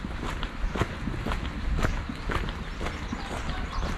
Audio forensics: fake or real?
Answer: real